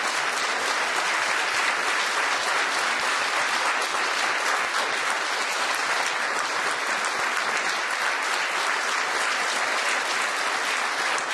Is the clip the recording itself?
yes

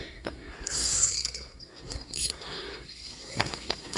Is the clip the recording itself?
no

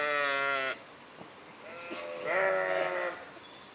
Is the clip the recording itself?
yes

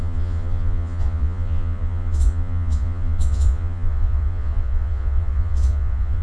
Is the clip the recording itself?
no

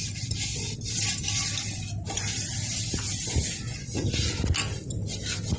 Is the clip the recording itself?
yes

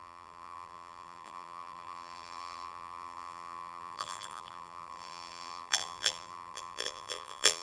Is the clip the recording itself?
no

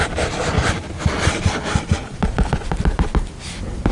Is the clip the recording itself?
yes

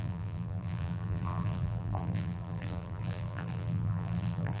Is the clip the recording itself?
no